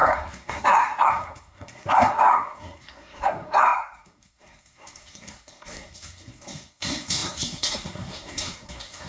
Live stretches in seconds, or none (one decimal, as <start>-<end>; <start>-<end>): none